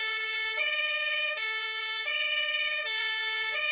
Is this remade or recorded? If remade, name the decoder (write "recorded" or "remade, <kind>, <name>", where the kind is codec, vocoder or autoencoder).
remade, codec, SNAC